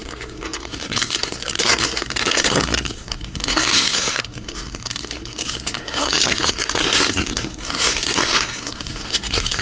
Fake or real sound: fake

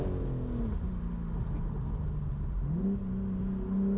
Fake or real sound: real